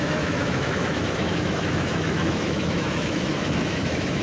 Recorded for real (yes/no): no